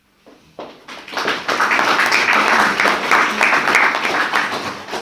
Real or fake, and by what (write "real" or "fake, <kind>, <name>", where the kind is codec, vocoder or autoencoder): real